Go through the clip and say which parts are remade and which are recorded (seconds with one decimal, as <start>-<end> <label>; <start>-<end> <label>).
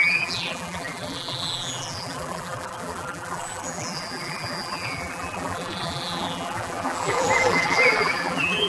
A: 0.0-8.7 remade